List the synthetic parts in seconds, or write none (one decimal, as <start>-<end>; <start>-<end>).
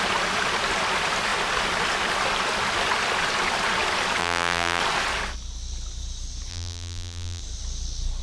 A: 4.2-4.8; 6.5-7.4